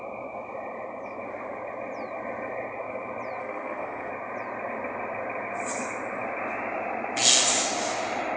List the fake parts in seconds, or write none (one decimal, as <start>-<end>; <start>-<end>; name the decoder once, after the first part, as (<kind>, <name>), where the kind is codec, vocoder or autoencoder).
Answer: 3.4-4.1 (codec, SNAC)